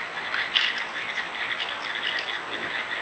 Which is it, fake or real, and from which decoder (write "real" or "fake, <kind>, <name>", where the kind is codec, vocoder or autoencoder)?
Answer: real